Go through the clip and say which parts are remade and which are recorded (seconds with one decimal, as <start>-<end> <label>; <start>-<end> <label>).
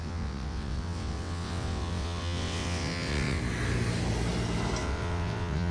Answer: 0.0-3.4 remade; 3.4-4.8 recorded; 4.8-5.7 remade